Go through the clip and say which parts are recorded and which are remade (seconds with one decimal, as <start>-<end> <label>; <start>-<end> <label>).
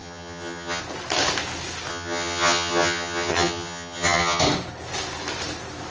0.0-0.8 remade; 0.8-1.9 recorded; 1.9-4.4 remade; 4.4-5.9 recorded